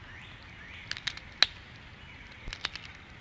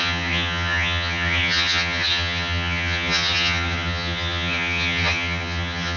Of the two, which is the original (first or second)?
first